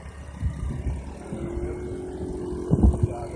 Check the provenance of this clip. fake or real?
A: real